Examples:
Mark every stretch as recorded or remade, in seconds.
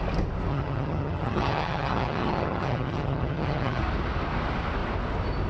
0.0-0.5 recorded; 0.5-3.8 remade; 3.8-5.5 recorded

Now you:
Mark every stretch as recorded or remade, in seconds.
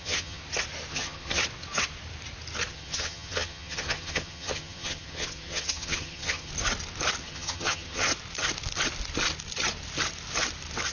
0.0-0.4 remade; 0.4-0.9 recorded; 0.9-1.4 remade; 1.4-2.7 recorded; 2.7-6.5 remade; 6.5-7.2 recorded; 7.2-8.1 remade; 8.1-10.9 recorded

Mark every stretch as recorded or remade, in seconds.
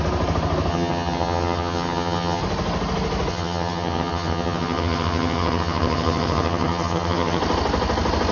0.0-0.7 recorded; 0.7-2.4 remade; 2.4-3.3 recorded; 3.3-7.4 remade; 7.4-8.3 recorded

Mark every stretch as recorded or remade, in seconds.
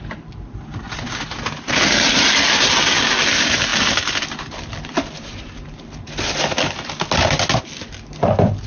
0.0-8.7 recorded